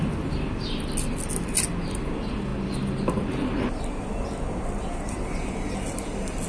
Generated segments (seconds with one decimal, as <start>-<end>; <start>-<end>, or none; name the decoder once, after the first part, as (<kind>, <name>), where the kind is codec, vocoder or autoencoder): none